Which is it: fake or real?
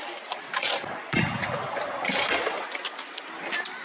real